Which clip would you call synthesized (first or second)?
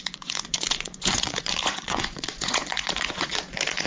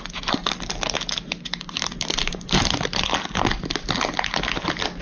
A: first